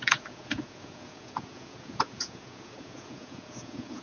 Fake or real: fake